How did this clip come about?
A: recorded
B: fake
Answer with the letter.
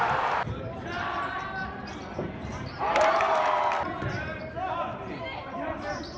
A